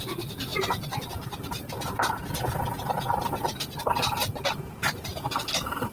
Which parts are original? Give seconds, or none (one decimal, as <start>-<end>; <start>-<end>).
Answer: 0.0-4.2